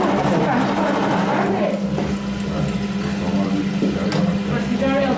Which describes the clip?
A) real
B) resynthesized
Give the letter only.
A